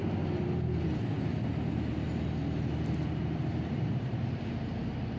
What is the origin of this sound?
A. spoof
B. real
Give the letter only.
B